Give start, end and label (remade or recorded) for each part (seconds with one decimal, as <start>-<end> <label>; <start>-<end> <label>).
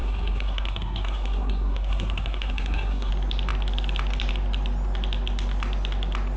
0.0-3.1 remade; 3.1-6.4 recorded